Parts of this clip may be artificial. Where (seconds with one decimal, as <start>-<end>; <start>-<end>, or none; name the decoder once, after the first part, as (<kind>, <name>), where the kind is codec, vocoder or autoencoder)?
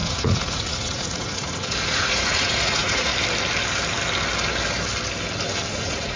0.0-3.1 (vocoder, Vocos); 5.7-6.2